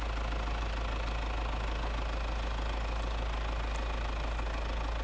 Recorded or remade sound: recorded